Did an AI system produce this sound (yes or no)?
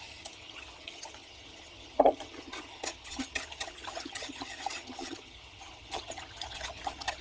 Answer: yes